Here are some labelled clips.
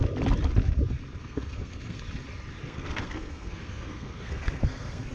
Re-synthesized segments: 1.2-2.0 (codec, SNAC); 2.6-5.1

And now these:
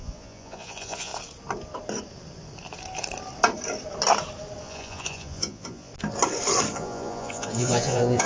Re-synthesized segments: 0.0-1.1 (vocoder, Vocos); 4.6-5.9; 6.7-8.3

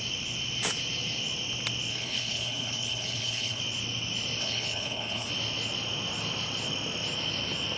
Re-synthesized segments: 1.9-3.6 (codec, HILCodec); 4.4-5.3

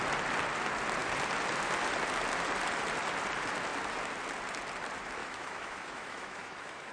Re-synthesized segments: 5.2-6.9 (autoencoder, DAC-VAE)

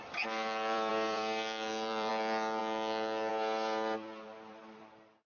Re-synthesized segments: 0.0-2.6 (vocoder, BigVGAN v2); 3.3-5.2

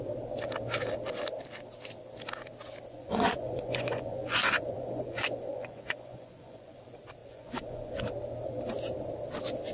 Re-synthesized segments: 2.9-6.8 (vocoder, Vocos); 7.2-7.9

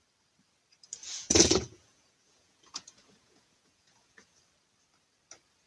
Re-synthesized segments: 1.0-4.4 (vocoder, Vocos)